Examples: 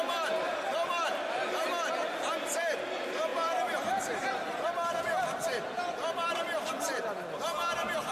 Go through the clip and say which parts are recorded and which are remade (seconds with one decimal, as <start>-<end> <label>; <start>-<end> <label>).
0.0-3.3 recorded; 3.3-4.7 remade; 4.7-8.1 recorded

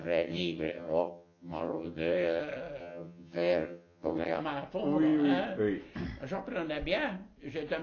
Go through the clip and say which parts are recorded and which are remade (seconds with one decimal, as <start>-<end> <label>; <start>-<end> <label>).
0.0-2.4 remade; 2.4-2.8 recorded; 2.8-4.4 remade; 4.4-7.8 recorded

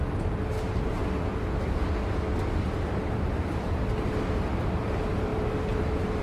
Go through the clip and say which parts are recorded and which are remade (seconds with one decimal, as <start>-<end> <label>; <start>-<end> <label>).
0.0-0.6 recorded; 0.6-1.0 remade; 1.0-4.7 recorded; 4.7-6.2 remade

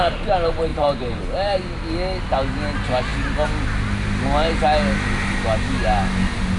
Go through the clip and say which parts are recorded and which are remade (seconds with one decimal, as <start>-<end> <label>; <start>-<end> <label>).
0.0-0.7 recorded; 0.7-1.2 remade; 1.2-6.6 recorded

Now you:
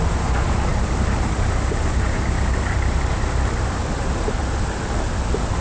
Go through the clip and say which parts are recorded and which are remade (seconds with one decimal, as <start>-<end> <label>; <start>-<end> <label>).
0.0-5.6 recorded

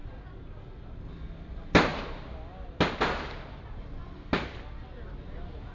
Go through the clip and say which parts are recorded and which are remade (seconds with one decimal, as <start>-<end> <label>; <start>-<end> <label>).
0.0-5.7 recorded

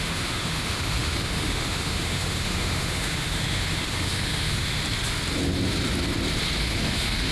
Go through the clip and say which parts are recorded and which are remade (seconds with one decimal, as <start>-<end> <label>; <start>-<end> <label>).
0.0-4.8 remade; 4.8-6.6 recorded; 6.6-7.3 remade